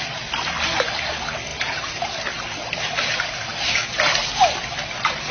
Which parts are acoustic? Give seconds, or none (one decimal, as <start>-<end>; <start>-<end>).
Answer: 0.0-1.5; 4.7-5.3